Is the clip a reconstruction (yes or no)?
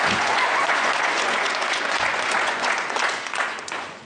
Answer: yes